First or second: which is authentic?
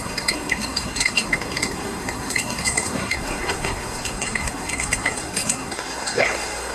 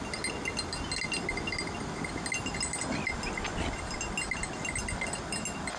second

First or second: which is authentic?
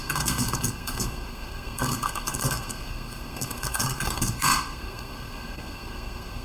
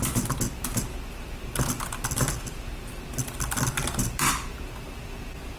second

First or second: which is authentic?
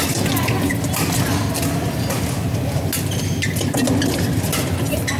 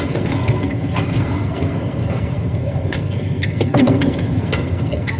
first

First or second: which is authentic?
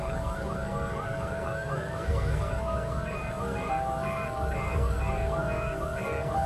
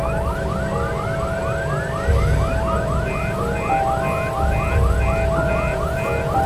second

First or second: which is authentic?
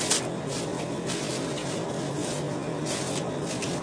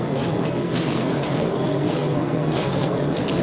first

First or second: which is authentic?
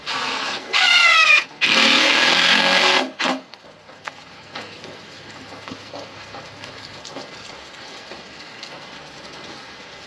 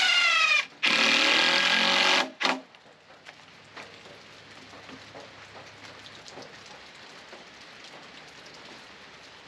second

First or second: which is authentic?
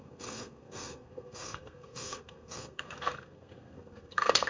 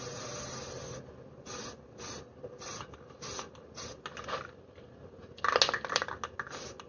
second